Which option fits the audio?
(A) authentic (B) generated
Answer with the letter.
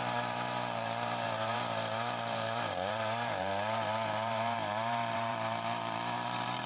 B